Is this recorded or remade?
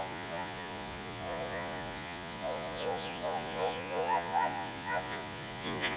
remade